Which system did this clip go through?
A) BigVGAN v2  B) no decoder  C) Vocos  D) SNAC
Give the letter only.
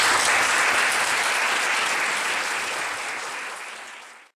B